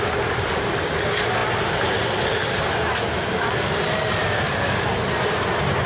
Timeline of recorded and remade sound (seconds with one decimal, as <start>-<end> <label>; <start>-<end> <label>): 0.0-5.9 recorded